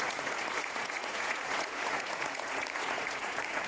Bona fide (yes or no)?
no